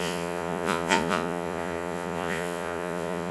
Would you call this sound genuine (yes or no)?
no